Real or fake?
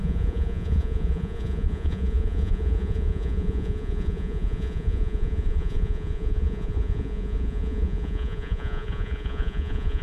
fake